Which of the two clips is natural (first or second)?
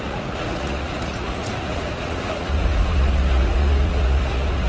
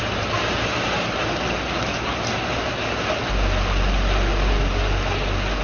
second